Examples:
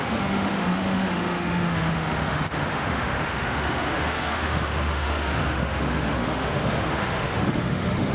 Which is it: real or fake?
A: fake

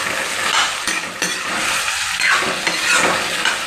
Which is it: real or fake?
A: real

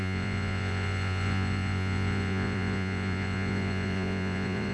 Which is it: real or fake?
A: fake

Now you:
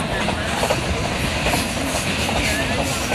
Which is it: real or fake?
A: real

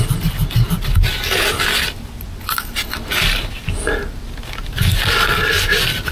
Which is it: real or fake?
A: real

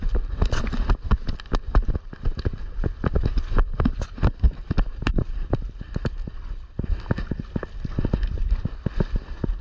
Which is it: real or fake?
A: real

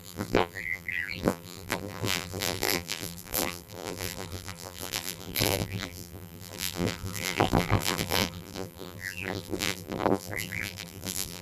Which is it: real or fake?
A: fake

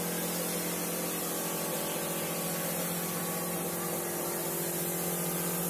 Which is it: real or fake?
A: real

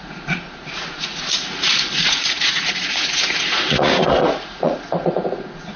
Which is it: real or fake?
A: fake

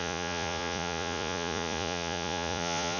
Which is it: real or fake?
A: fake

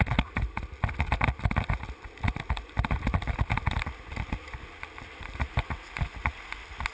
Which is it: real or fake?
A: real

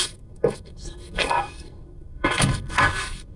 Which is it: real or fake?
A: fake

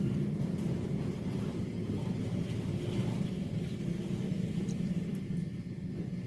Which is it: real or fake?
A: real